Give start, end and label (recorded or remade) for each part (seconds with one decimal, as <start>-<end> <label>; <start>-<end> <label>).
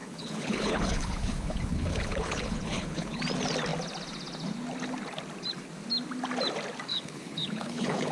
0.0-3.2 remade; 3.2-6.9 recorded; 6.9-8.1 remade